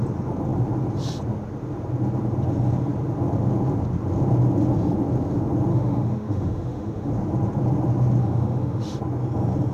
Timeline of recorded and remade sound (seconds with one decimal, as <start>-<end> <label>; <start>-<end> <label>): 0.0-5.7 recorded; 5.7-7.1 remade; 7.1-8.2 recorded; 8.2-9.0 remade; 9.0-9.7 recorded